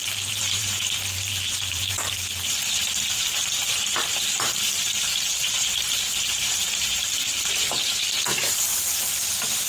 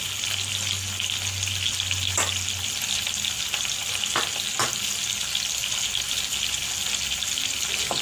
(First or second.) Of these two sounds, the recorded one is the second